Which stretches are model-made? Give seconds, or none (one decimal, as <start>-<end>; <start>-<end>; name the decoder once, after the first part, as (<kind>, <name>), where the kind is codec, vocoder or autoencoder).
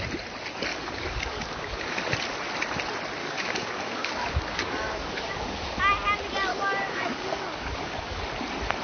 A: 0.7-2.0 (codec, DAC); 3.2-5.8; 6.5-8.2